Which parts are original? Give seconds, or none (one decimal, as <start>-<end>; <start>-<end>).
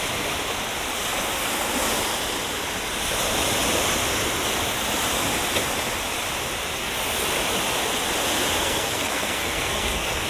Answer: 0.0-8.6